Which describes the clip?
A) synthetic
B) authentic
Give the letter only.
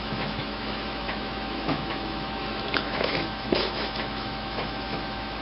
A